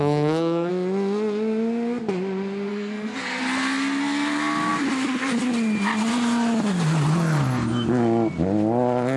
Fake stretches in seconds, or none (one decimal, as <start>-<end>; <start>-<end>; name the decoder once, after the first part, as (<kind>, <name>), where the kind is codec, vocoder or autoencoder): 0.0-0.7 (codec, SNAC); 2.7-3.4